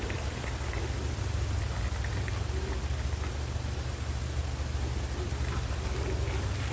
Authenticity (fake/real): real